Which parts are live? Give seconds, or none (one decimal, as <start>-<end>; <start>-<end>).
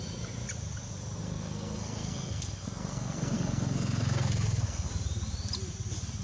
0.0-1.2; 4.9-6.2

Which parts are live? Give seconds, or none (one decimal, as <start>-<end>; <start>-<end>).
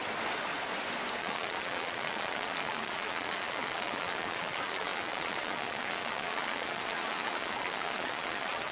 0.0-1.2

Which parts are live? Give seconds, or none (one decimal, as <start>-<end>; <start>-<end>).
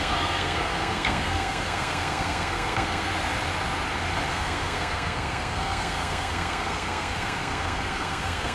3.1-4.3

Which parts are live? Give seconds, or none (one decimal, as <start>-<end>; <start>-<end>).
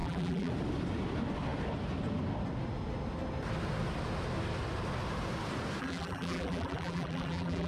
0.5-5.8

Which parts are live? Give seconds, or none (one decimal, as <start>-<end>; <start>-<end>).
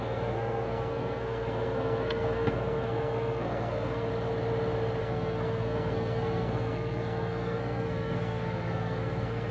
4.1-5.0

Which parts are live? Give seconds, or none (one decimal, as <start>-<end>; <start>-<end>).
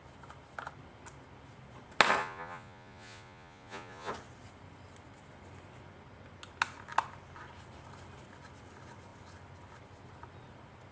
0.0-2.2; 4.1-10.9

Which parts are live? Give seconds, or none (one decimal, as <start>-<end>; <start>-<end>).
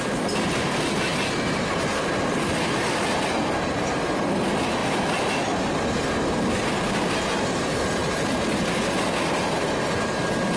0.0-10.6